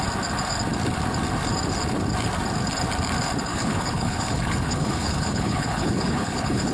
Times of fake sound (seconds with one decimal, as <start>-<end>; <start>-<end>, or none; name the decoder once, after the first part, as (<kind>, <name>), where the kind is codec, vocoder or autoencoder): 3.5-6.7 (codec, HILCodec)